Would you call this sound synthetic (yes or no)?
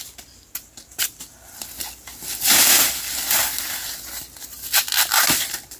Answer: no